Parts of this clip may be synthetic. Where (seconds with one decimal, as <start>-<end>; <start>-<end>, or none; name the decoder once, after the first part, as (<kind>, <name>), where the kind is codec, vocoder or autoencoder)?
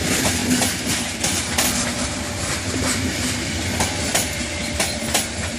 0.0-0.4 (vocoder, BigVGAN v2); 1.2-5.6